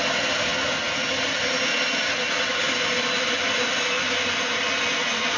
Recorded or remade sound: recorded